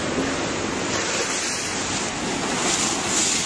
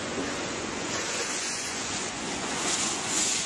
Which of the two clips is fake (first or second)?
second